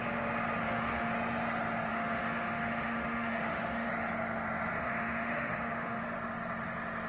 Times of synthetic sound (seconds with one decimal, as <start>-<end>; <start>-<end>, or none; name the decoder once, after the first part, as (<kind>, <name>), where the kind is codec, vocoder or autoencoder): 0.6-1.1 (autoencoder, DAC-VAE); 1.9-3.9; 4.7-6.0